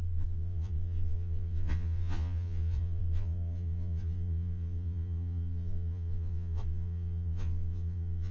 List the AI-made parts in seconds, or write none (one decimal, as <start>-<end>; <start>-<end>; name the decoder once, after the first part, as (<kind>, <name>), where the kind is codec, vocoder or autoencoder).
0.0-8.3 (vocoder, Vocos)